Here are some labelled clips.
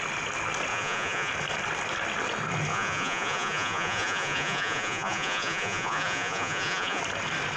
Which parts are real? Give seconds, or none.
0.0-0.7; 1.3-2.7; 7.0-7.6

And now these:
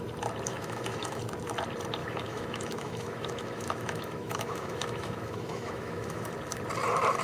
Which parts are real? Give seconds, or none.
0.0-0.5; 1.2-2.0; 6.3-7.2

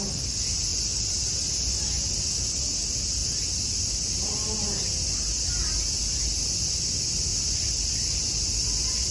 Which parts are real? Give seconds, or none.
0.0-9.1

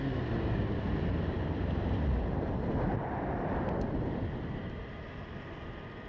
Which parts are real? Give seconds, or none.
0.0-0.9; 4.6-6.1

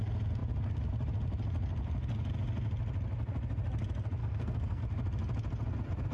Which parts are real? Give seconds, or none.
0.0-4.2; 4.8-6.1

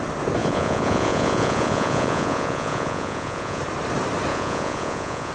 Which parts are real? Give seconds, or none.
0.0-0.4; 3.6-4.3

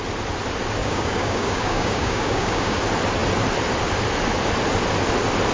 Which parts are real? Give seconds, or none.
0.0-0.8; 2.8-5.5